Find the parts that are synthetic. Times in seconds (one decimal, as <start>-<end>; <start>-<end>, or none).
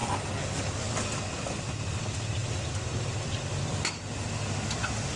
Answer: 0.8-5.2